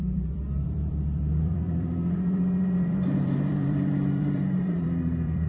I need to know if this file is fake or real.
fake